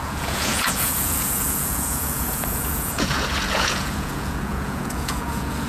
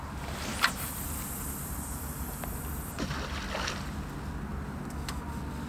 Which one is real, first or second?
second